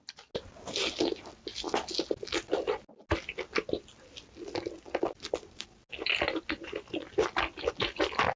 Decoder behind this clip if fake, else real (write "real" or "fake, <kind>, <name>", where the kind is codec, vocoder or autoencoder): real